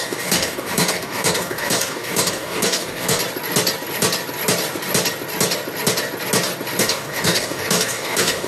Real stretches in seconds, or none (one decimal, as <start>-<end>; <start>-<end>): 3.2-6.8

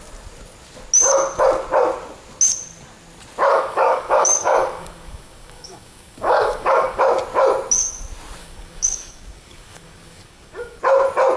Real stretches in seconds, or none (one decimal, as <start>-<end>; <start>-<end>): 0.0-3.5; 7.0-8.4; 10.8-11.4

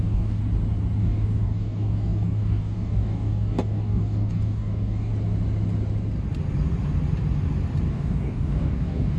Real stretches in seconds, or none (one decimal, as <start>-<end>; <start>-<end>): 0.4-1.0; 5.1-7.9

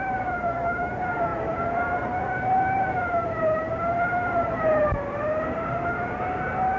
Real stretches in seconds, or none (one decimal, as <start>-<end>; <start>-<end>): 0.0-6.8

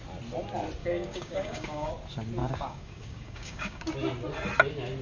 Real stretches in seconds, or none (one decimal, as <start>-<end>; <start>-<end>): 0.0-0.8; 1.9-2.4; 3.9-5.0

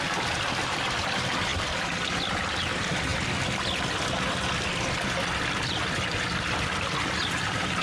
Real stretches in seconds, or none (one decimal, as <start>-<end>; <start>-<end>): 0.0-7.8

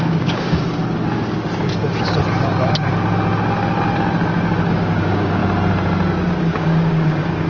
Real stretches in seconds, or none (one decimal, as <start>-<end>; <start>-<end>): 0.8-4.7; 5.4-6.4

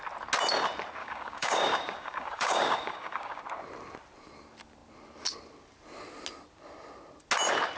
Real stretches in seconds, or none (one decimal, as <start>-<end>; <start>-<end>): 0.0-1.0; 3.4-7.8